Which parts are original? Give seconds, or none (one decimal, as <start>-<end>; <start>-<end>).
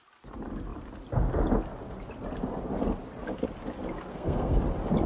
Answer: 0.0-4.1; 4.6-5.1